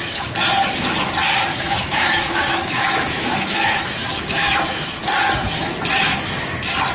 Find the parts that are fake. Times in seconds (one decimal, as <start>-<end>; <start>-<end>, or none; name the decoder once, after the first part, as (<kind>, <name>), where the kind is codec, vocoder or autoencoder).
1.5-5.0 (autoencoder, DAC-VAE)